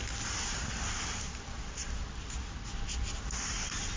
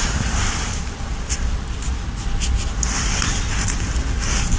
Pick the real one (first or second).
first